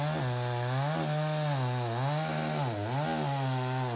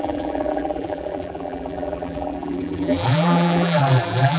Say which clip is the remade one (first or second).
second